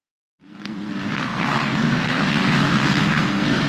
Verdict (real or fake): fake